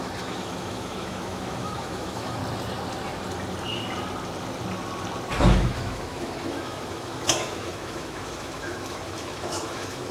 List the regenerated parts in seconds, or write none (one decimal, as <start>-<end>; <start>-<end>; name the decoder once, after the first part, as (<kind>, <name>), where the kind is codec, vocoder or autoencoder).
0.0-2.4 (autoencoder, DAC-VAE); 5.4-10.1